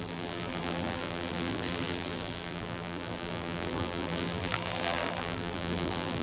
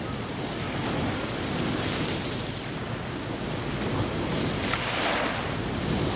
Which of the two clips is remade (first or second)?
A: first